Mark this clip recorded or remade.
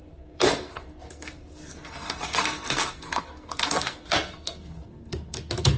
remade